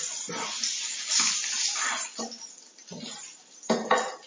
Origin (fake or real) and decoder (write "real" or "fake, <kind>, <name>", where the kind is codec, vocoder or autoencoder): real